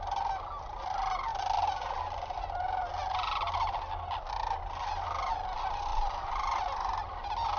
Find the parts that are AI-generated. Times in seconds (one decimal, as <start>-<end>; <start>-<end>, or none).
none

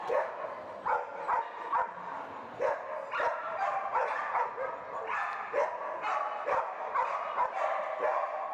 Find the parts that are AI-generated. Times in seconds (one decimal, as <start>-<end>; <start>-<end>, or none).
3.3-4.3